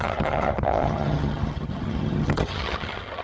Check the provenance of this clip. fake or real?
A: fake